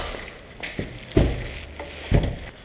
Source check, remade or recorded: recorded